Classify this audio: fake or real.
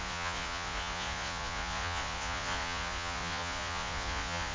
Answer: fake